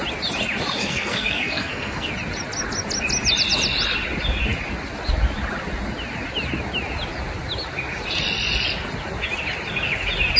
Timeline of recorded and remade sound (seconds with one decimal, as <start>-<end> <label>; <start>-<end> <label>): 0.0-0.8 recorded; 0.8-2.1 remade; 2.1-10.4 recorded